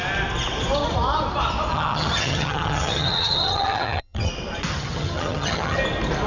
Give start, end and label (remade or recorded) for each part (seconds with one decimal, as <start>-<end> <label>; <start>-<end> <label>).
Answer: 0.0-1.7 recorded; 1.7-4.3 remade; 4.3-4.7 recorded; 4.7-5.8 remade; 5.8-6.3 recorded